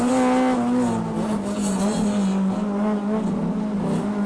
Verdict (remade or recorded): recorded